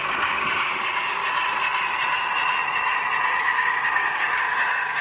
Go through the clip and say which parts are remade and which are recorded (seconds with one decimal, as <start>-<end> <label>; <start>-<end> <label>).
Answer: 0.0-1.2 remade; 1.2-3.4 recorded; 3.4-5.0 remade